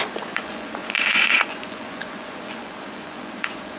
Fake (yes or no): yes